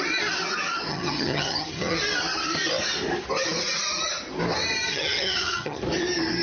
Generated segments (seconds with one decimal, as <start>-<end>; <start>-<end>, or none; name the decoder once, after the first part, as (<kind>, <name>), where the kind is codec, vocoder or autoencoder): 0.9-2.0 (vocoder, HiFi-GAN); 4.9-5.8